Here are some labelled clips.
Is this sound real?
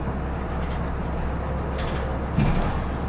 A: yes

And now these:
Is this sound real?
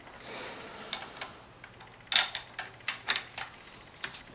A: yes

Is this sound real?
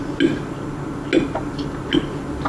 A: yes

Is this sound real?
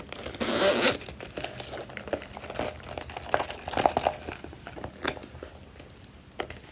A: yes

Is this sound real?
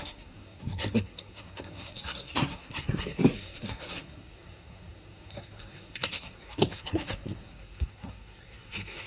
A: no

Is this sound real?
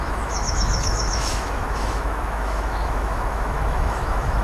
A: no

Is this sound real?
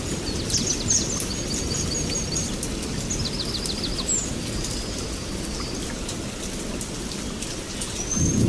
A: yes